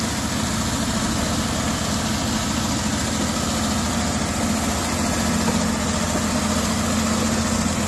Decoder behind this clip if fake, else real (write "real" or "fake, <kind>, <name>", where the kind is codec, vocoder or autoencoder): real